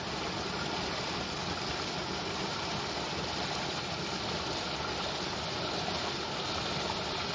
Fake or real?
real